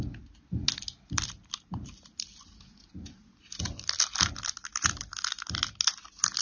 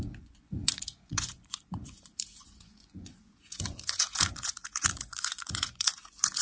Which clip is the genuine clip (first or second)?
first